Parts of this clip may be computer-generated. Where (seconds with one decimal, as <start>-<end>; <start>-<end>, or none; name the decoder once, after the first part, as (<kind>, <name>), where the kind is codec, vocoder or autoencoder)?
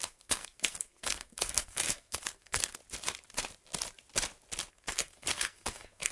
0.0-2.8 (codec, SNAC); 4.7-6.1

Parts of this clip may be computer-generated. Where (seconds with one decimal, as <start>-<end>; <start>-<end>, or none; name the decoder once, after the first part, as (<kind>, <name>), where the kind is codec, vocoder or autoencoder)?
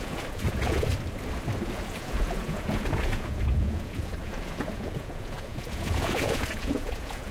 0.0-0.9 (vocoder, Vocos); 1.6-7.3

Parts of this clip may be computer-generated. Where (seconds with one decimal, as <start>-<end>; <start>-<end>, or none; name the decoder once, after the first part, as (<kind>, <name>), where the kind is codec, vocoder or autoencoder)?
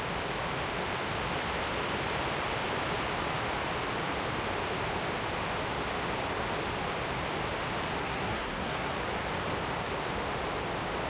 8.0-8.9 (codec, SNAC)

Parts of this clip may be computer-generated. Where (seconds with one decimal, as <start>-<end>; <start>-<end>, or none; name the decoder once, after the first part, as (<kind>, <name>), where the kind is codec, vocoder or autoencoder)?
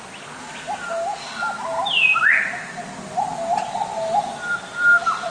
none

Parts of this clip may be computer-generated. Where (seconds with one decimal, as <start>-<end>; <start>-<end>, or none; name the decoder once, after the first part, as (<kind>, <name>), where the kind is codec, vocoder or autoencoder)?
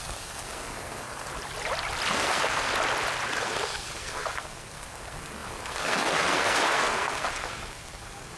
0.0-1.3 (codec, SNAC); 2.1-2.7; 3.3-8.4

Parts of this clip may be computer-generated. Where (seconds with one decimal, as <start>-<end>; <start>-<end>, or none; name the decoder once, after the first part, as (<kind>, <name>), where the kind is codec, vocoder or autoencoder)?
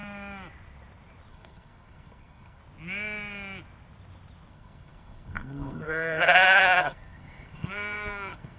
1.3-2.6 (codec, SNAC); 4.5-8.6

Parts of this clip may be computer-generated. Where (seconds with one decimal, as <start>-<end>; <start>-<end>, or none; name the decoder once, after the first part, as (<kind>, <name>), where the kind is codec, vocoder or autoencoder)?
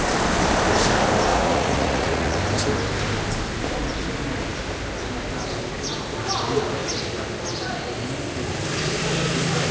1.3-2.4 (vocoder, Vocos)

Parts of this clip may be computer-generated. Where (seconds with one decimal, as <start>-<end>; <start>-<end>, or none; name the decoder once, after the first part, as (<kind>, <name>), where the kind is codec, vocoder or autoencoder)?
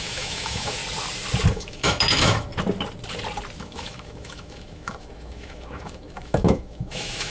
0.0-0.8 (autoencoder, DAC-VAE); 1.5-2.5; 3.6-7.3